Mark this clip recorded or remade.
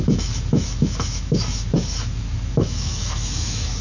remade